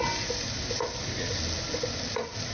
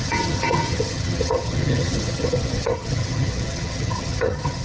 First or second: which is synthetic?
second